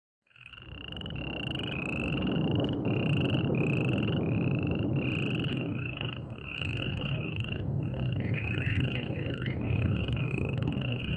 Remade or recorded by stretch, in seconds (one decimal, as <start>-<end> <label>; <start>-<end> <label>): 0.0-0.5 remade; 0.5-5.5 recorded; 5.5-11.2 remade